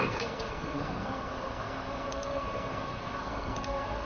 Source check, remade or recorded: remade